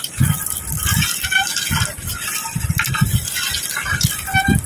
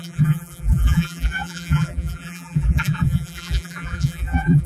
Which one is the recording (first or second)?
first